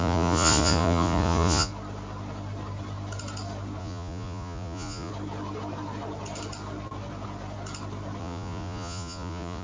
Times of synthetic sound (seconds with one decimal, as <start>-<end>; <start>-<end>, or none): 0.0-1.7; 3.8-5.1; 8.2-9.6